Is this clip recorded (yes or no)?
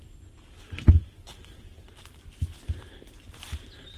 yes